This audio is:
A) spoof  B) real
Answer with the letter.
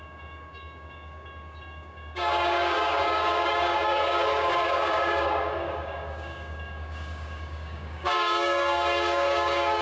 A